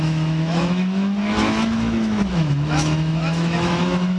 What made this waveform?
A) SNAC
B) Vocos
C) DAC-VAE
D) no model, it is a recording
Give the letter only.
C